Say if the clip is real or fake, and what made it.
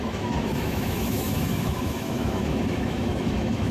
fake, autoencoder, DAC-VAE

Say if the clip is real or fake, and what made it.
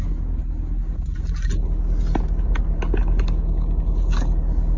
real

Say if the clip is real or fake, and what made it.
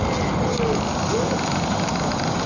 real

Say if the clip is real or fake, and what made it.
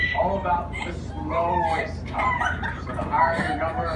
real